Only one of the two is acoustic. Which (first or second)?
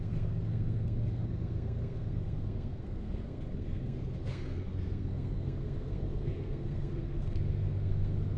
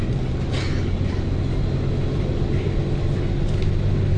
second